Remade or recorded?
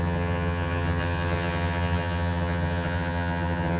remade